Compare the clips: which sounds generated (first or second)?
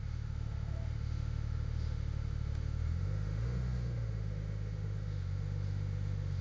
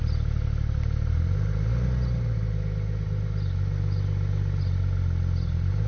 first